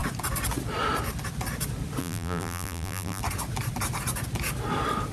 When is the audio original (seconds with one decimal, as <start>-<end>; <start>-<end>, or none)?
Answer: 0.0-2.0; 3.2-5.1